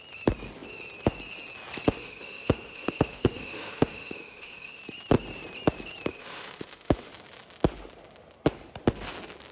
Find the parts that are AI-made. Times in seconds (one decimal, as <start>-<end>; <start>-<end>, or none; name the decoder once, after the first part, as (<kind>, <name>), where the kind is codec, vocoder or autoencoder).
1.9-4.8 (autoencoder, DAC-VAE); 6.1-7.1